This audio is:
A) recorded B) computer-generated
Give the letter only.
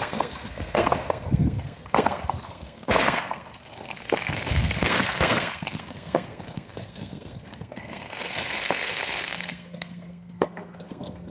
B